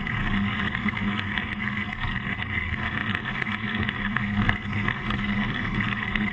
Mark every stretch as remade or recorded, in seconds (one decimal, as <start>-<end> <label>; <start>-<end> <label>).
0.0-6.3 remade

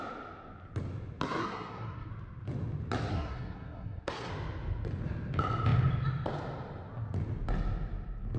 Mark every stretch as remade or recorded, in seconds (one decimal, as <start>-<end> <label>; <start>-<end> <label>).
0.0-1.4 recorded; 1.4-2.1 remade; 2.1-3.1 recorded; 3.1-4.3 remade; 4.3-8.4 recorded